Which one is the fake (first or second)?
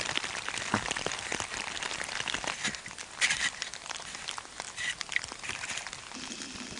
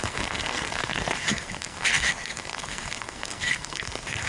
second